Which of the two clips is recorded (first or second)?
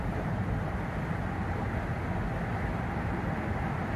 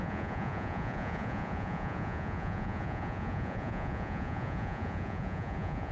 first